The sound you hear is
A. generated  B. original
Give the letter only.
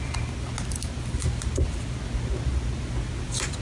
B